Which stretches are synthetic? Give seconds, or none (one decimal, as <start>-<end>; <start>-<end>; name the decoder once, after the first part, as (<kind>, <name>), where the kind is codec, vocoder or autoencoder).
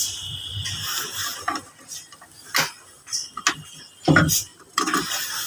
none